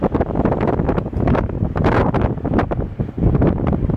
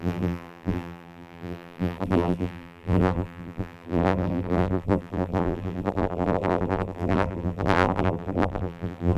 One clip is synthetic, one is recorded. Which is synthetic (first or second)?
second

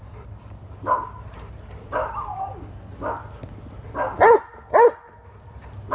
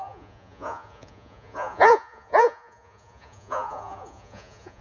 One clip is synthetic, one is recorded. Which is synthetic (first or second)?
second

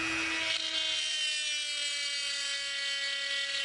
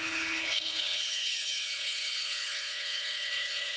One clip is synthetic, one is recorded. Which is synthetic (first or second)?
second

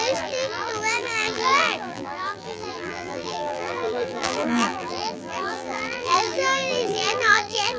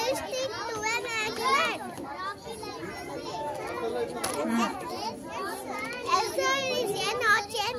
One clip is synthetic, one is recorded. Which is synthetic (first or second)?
first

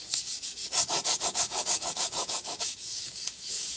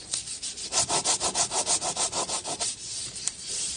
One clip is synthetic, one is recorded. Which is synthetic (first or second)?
first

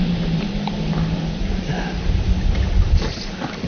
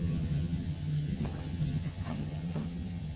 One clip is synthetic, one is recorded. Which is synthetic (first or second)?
second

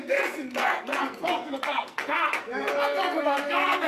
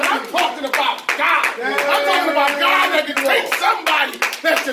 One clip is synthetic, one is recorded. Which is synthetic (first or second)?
first